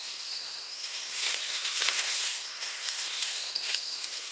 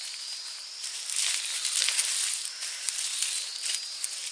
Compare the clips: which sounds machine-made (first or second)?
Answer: first